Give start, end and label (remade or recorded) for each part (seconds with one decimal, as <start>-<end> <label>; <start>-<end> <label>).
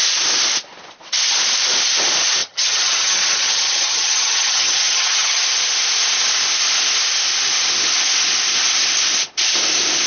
0.0-2.4 recorded; 2.4-5.4 remade; 5.4-10.1 recorded